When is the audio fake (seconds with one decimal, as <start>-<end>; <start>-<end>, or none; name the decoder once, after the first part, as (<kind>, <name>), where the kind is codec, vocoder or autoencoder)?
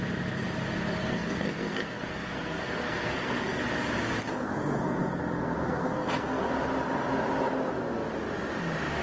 1.0-3.6 (codec, SNAC); 4.3-6.5